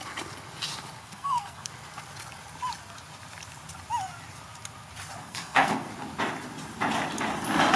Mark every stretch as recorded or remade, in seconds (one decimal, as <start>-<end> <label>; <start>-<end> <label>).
0.0-1.0 recorded; 1.0-1.7 remade; 1.7-5.2 recorded; 5.2-5.9 remade; 5.9-7.8 recorded